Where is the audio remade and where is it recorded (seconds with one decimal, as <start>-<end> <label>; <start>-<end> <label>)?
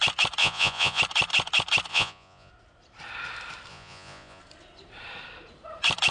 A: 0.0-0.4 recorded; 0.4-1.0 remade; 1.0-1.9 recorded; 1.9-2.5 remade; 2.5-3.7 recorded; 3.7-4.4 remade; 4.4-6.1 recorded